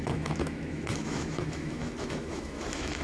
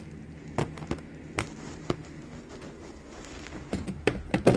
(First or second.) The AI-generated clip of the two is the first